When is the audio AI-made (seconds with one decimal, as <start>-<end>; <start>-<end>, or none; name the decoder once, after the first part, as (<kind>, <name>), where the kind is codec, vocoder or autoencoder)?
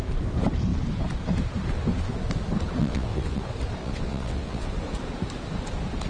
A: 2.8-3.4 (vocoder, WaveNeXt); 3.8-4.7